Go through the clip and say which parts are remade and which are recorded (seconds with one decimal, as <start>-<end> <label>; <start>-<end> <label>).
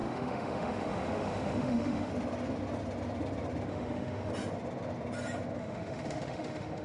0.0-2.1 remade; 2.1-3.7 recorded; 3.7-4.3 remade; 4.3-5.6 recorded; 5.6-6.8 remade